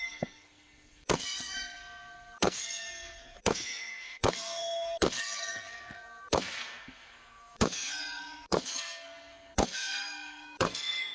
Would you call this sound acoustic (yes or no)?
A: no